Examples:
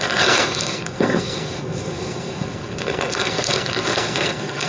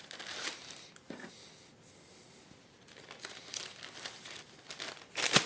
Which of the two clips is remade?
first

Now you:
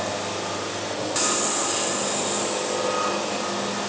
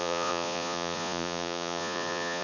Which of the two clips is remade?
second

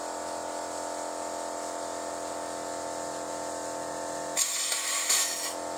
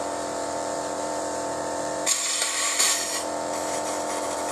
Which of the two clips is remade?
second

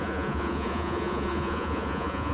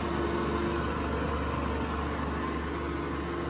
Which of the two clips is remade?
first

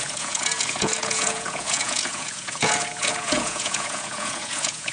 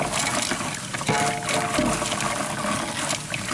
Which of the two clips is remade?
first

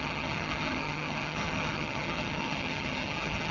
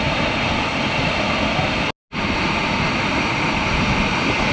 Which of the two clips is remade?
first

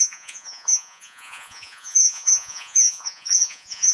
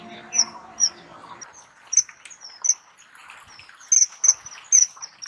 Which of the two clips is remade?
first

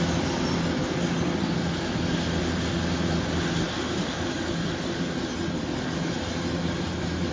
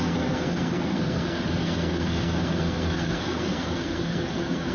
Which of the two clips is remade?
second